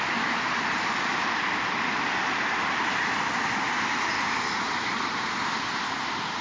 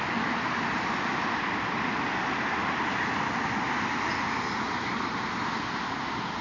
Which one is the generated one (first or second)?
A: first